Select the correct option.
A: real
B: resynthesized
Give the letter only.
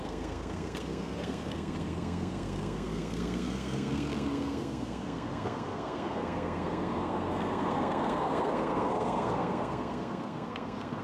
B